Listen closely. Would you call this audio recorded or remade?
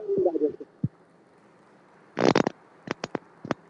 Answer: recorded